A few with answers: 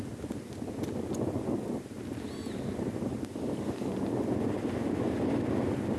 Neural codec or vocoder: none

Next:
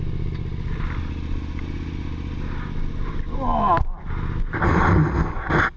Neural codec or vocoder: none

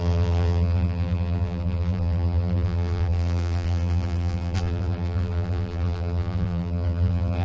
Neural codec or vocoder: vocoder, BigVGAN v2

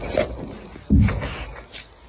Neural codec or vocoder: none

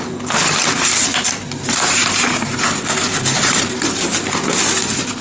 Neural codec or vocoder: none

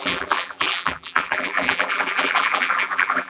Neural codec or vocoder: vocoder, BigVGAN v2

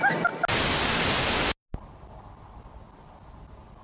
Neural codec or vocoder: none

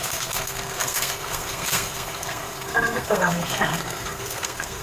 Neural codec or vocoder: codec, SNAC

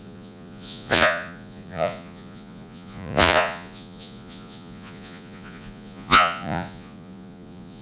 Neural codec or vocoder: vocoder, Vocos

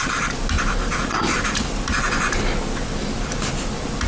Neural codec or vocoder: none